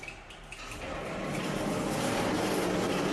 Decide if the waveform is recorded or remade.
recorded